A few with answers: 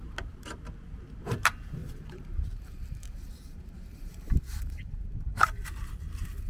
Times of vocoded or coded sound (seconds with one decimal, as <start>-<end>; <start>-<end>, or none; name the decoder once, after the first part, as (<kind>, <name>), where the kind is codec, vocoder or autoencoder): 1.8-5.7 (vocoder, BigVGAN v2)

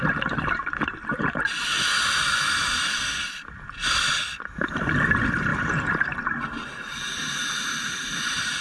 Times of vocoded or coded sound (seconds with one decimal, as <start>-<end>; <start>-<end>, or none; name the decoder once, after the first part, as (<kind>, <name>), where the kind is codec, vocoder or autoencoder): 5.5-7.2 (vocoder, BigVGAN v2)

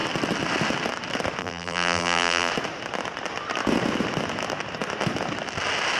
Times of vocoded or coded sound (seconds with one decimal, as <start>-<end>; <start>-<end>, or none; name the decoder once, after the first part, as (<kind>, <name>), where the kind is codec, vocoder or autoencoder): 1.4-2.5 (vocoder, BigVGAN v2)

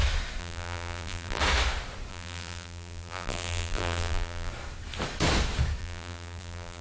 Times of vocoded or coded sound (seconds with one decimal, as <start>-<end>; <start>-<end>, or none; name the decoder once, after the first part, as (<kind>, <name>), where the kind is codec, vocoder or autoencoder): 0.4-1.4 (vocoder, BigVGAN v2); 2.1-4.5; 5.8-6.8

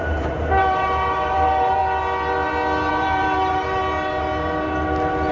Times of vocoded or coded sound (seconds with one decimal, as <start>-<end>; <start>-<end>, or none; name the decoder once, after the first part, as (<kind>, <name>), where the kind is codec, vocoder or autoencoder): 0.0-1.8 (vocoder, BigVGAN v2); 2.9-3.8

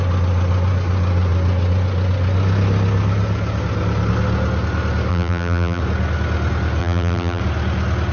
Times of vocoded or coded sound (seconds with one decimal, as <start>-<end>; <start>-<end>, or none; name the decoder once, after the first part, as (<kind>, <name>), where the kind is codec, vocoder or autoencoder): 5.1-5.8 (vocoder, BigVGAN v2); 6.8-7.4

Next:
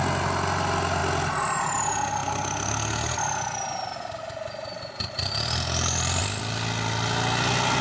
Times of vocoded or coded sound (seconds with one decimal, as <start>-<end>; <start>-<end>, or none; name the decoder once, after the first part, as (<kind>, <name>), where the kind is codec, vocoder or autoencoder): none

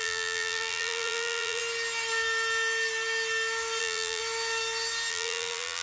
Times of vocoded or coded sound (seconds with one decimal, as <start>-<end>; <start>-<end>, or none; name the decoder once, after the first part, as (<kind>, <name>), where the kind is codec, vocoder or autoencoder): 0.0-1.6 (vocoder, BigVGAN v2); 3.8-4.2; 5.1-5.8